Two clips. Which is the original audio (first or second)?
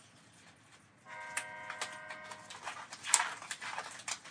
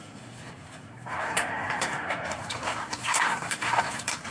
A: first